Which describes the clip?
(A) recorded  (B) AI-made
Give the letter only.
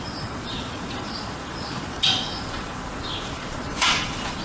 B